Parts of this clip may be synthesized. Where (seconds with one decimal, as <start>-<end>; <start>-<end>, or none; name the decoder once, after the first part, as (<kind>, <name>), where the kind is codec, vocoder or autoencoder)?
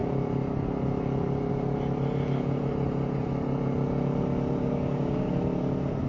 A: 4.6-5.3 (codec, DAC)